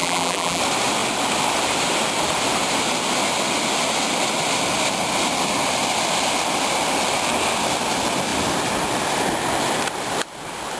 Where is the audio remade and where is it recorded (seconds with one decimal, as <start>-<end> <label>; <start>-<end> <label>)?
0.0-0.6 remade; 0.6-10.8 recorded